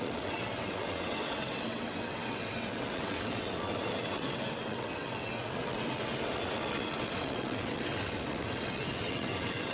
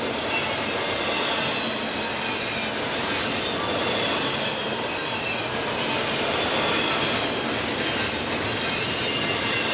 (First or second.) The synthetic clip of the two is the first